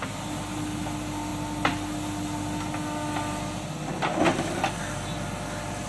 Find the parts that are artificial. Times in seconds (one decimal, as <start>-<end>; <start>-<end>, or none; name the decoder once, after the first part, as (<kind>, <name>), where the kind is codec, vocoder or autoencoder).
none